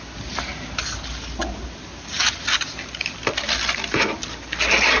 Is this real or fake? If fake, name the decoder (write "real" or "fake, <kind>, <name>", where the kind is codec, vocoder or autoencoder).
real